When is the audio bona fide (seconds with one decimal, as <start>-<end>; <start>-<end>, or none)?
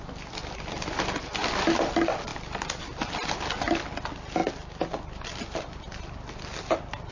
0.0-7.1